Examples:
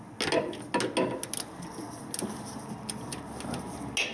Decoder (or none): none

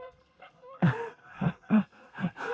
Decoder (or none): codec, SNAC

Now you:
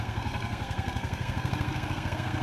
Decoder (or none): codec, SNAC